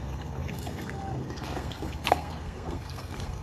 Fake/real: fake